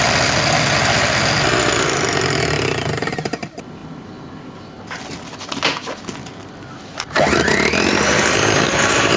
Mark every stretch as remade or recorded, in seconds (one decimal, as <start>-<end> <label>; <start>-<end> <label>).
0.0-9.2 recorded